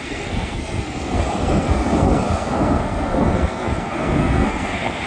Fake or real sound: fake